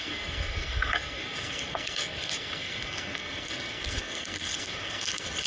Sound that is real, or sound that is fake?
fake